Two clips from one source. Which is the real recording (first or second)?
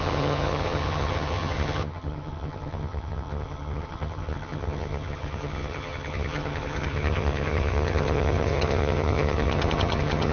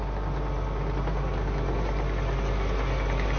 second